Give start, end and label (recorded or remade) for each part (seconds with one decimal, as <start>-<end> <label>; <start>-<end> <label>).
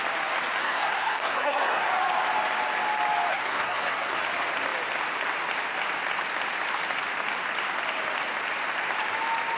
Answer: 0.0-0.6 recorded; 0.6-1.9 remade; 1.9-3.3 recorded; 3.3-4.2 remade; 4.2-9.6 recorded